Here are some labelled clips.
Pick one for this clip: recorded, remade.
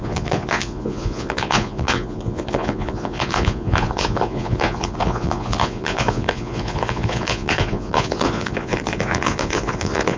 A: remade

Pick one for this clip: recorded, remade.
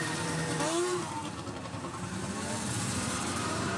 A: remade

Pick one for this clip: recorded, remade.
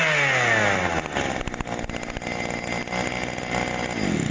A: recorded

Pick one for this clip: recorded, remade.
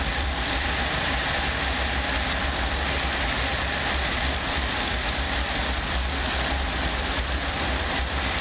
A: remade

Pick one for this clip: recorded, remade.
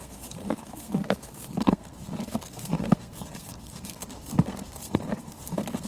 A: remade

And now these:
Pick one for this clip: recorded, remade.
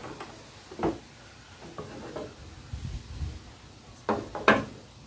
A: recorded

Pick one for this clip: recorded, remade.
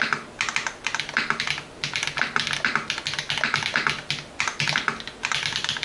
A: recorded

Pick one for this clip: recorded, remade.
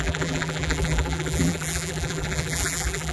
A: remade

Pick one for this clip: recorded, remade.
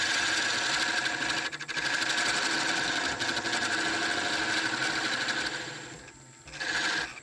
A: recorded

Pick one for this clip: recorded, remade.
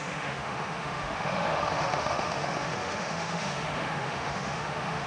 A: remade